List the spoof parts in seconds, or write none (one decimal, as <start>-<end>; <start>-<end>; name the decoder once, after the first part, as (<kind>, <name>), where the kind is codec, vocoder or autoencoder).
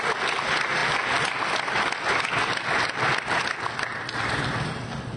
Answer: none